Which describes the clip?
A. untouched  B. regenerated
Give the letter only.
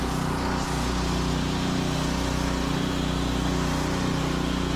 A